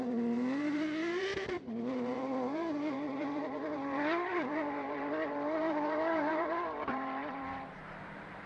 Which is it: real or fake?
fake